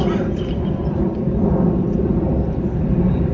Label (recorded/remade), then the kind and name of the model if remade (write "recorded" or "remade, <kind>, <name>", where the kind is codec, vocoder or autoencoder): remade, vocoder, BigVGAN v2